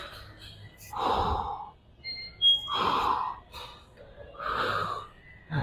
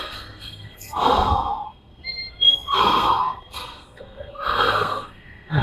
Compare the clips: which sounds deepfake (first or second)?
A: second